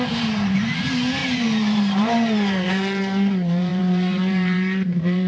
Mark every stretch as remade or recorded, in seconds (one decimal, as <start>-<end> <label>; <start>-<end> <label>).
0.0-5.3 remade